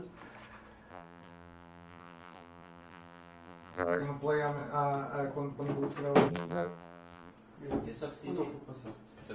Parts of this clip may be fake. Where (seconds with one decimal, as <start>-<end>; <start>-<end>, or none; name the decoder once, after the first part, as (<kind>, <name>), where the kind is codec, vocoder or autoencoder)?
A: 0.9-4.0 (vocoder, BigVGAN v2); 6.3-7.3